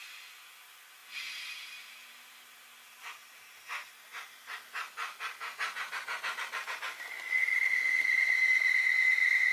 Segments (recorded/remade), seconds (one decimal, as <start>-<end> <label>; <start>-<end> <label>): 0.0-9.5 recorded